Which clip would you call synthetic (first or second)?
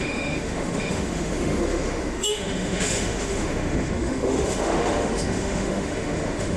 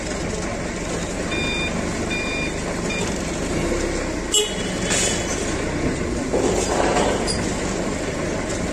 first